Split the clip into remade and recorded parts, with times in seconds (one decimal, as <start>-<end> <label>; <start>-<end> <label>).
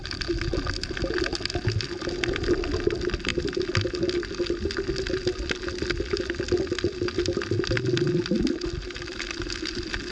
0.0-10.1 recorded